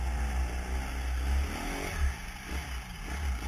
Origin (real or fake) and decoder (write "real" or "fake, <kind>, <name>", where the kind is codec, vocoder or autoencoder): real